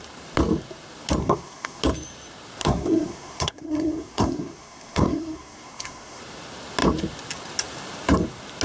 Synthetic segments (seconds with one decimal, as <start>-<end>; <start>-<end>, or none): 1.2-1.8; 2.6-6.2